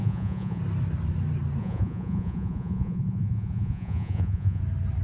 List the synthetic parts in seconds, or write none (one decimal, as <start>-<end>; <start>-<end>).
0.0-0.6; 1.6-4.6